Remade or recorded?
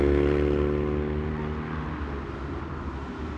recorded